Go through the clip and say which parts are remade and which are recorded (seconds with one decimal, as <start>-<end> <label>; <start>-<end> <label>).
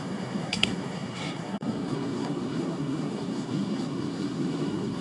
0.0-5.0 remade